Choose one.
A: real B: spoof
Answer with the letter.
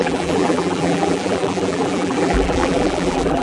B